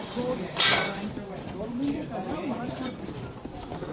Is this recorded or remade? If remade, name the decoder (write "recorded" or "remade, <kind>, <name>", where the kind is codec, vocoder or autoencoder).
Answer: recorded